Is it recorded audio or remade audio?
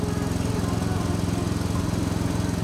recorded